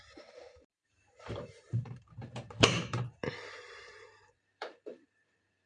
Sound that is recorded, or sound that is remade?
remade